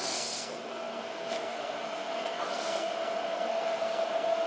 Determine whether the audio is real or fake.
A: fake